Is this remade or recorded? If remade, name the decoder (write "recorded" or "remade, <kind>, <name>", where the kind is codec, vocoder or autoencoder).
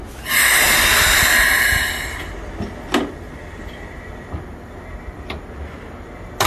recorded